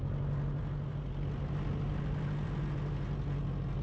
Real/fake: real